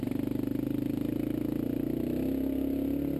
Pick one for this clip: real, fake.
real